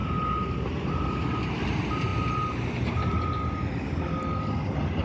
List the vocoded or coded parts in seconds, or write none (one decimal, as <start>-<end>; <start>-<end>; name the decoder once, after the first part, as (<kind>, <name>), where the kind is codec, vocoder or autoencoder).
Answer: none